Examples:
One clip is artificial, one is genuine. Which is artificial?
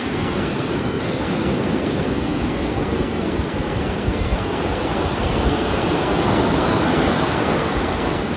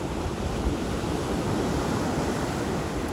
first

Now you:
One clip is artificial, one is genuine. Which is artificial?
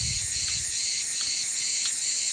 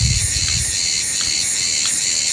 first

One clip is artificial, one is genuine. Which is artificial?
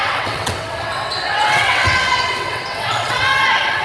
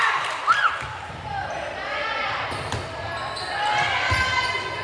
first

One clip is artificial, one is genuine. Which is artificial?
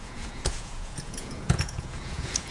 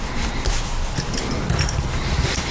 first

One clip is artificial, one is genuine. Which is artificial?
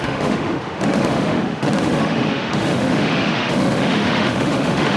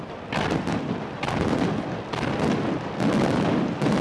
first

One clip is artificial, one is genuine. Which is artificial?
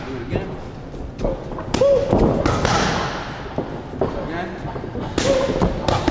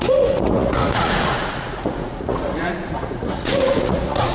second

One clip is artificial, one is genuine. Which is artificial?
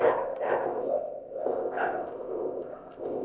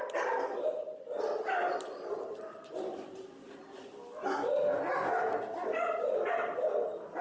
first